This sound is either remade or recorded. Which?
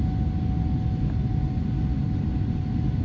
recorded